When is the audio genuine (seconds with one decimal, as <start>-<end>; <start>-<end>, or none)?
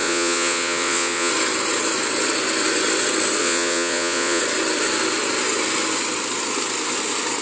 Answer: 1.3-3.4; 4.4-7.4